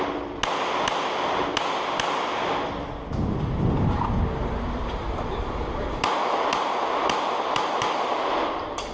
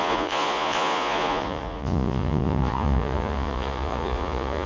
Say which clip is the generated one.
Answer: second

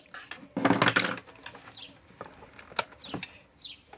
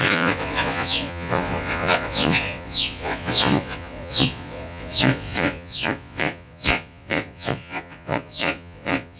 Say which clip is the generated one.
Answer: second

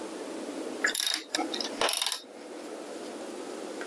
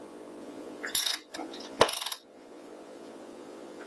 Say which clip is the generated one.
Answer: second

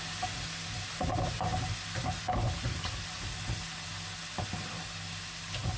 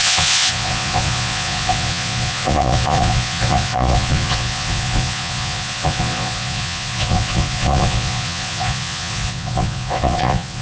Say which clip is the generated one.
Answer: second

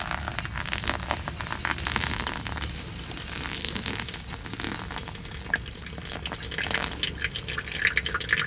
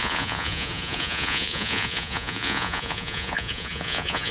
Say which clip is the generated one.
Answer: second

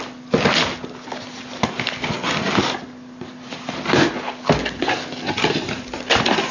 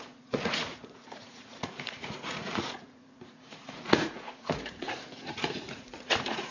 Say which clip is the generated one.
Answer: second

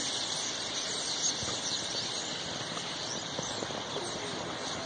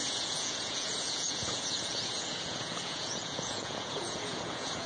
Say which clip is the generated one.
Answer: second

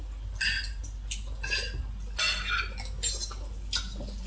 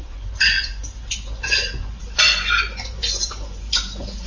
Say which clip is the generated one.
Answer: second